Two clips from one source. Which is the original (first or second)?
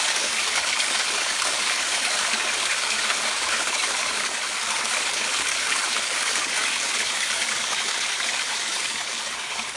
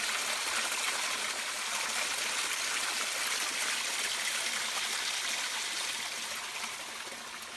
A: second